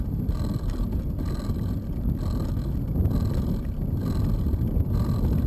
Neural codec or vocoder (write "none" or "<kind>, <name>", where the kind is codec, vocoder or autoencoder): none